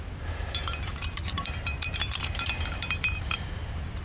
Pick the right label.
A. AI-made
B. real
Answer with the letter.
A